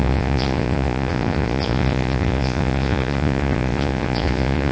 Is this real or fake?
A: fake